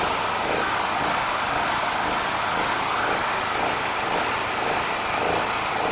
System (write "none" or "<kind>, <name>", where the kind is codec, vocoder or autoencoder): none